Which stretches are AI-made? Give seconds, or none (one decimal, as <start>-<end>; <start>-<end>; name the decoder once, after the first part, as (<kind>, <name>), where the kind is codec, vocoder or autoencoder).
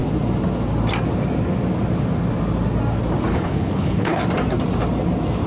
3.3-4.2 (codec, HILCodec)